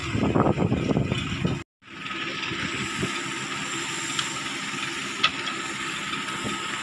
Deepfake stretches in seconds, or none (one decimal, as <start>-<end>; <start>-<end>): none